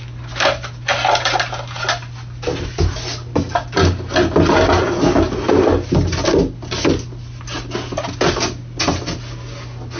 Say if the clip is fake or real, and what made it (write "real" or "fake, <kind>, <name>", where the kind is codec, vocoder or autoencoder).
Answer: real